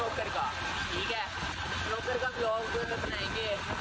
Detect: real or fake real